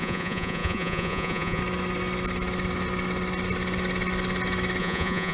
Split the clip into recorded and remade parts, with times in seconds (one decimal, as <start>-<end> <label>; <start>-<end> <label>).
0.0-1.6 remade; 1.6-4.8 recorded; 4.8-5.3 remade